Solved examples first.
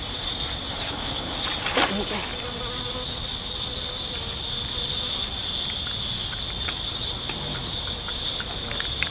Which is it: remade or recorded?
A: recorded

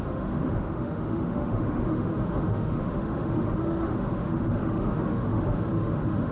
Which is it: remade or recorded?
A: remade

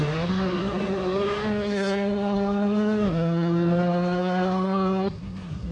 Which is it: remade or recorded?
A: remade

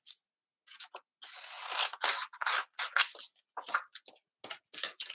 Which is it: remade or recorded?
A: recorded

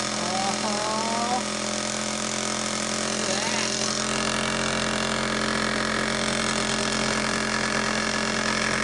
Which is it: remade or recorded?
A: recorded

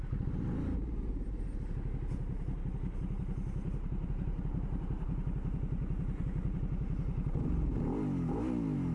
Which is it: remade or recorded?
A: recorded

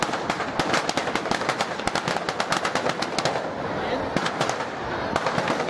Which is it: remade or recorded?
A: recorded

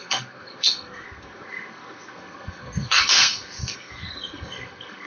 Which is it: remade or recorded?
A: remade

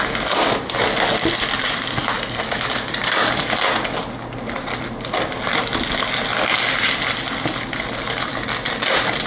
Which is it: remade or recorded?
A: recorded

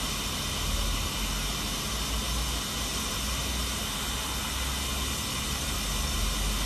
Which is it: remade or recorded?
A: recorded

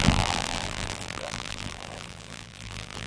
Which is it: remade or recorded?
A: remade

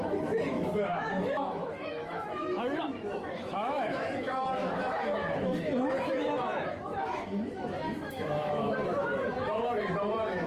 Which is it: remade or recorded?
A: remade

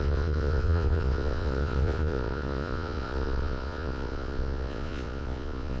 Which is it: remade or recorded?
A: remade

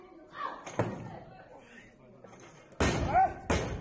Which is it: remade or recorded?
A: recorded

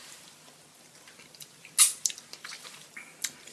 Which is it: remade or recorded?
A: recorded